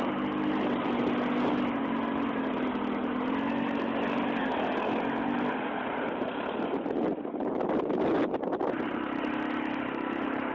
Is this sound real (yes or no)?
yes